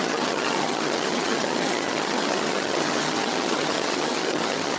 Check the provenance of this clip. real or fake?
fake